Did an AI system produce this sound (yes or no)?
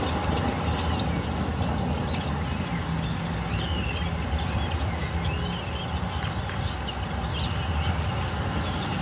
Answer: no